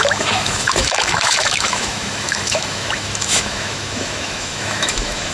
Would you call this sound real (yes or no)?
no